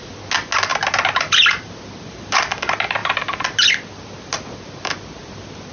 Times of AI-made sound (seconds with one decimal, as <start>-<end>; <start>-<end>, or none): none